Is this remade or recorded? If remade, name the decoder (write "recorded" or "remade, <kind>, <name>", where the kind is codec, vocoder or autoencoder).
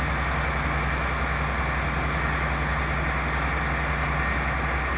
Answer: recorded